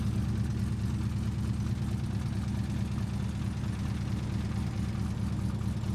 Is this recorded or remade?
recorded